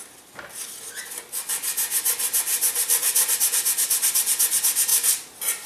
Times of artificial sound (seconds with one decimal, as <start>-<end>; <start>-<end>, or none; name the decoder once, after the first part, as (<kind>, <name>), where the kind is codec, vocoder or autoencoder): 2.5-3.3 (vocoder, BigVGAN v2); 4.9-5.7